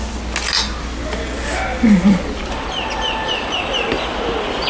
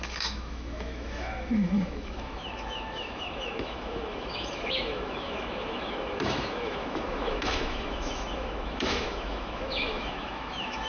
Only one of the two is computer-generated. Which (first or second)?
second